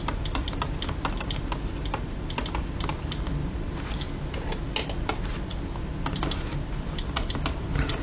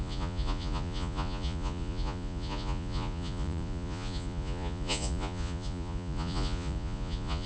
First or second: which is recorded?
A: first